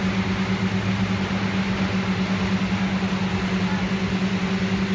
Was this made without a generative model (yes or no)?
yes